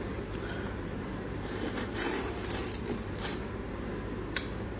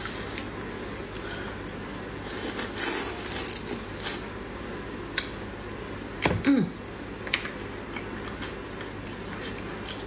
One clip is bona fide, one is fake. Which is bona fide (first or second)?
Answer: second